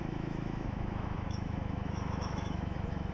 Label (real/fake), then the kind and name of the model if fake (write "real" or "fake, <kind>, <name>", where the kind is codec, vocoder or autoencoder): fake, autoencoder, DAC-VAE